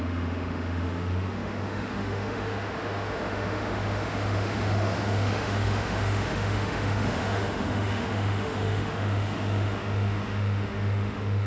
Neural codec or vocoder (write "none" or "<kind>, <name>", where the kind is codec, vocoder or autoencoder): autoencoder, DAC-VAE